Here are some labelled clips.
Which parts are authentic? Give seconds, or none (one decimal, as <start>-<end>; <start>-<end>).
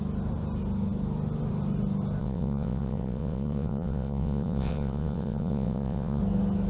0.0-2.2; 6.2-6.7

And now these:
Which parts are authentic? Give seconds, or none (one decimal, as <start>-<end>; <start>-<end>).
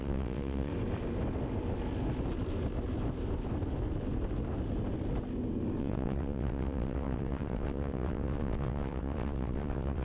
0.7-5.8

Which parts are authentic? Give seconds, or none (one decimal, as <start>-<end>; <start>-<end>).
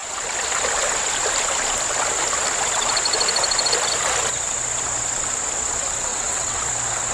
0.0-6.1; 6.6-7.1